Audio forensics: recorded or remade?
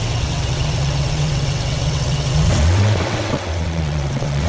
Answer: remade